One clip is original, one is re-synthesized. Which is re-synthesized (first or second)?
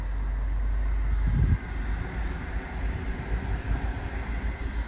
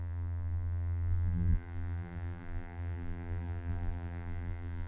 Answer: second